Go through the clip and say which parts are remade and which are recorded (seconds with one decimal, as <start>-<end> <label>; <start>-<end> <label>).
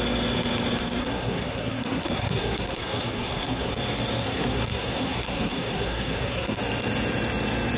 0.0-1.0 recorded; 1.0-3.7 remade; 3.7-4.2 recorded; 4.2-6.6 remade; 6.6-7.8 recorded